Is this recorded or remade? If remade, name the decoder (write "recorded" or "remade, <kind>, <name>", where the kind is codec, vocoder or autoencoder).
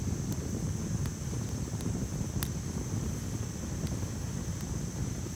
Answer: recorded